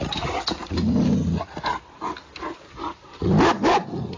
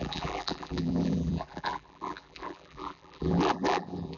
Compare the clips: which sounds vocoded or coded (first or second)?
second